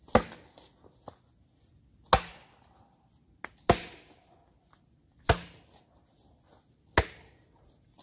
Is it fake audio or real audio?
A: real